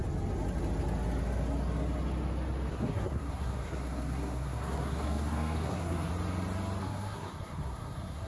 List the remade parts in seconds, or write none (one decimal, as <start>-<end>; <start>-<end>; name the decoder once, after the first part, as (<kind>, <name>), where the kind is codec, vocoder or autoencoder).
2.7-6.1 (codec, SNAC); 6.8-8.3